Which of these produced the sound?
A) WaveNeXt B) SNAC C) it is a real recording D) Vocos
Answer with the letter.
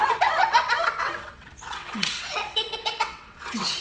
A